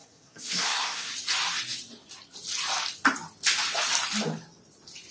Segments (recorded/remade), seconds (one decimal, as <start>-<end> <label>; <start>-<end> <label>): 0.0-1.1 remade; 1.1-5.1 recorded